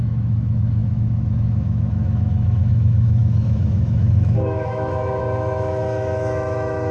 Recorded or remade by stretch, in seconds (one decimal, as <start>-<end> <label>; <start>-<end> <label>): 0.0-6.9 remade